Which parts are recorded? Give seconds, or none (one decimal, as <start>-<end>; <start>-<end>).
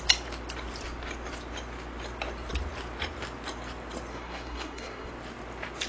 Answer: 0.0-4.1; 5.1-5.9